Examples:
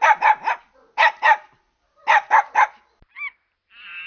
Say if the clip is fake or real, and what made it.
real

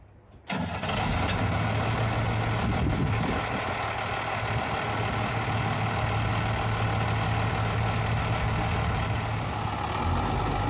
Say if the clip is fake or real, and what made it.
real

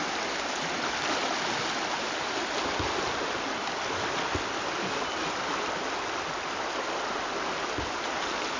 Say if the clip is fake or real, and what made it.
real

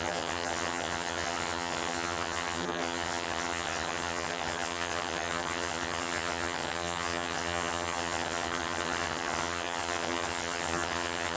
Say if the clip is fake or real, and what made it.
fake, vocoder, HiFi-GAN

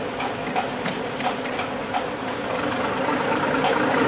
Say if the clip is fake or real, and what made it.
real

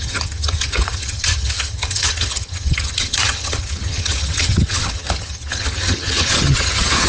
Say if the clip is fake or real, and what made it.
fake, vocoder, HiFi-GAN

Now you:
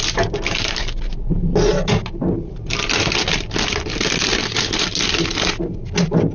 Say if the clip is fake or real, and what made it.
real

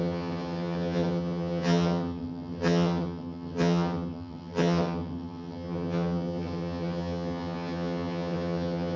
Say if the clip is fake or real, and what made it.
fake, vocoder, HiFi-GAN